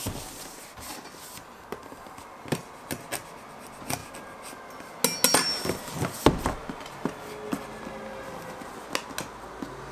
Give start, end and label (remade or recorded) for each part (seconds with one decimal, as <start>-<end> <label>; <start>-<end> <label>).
0.0-9.9 recorded